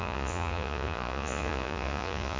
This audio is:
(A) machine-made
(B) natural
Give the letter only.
A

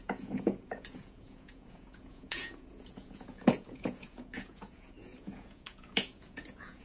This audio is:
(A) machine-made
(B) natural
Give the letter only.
A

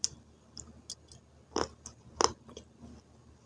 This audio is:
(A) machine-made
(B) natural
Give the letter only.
B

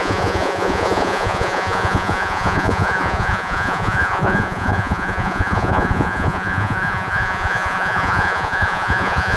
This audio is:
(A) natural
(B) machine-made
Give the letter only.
B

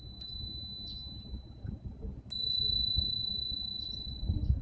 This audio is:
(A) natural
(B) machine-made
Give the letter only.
A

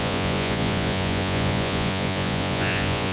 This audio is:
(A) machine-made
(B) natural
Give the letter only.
A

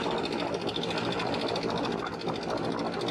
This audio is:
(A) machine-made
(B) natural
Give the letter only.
B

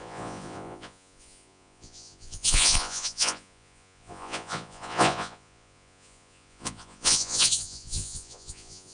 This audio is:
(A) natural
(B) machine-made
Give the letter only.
B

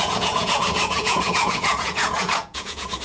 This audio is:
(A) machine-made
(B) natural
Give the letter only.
A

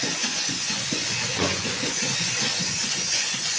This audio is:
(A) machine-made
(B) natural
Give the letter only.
A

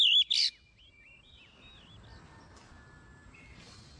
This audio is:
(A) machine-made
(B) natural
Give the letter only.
B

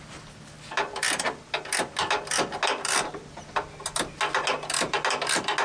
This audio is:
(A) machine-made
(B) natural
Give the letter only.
B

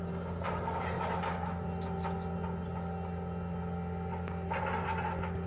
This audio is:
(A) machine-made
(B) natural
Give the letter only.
B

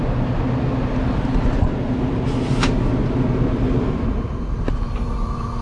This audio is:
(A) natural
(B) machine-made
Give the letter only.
A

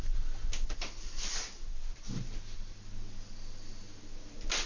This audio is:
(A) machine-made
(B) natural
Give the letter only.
B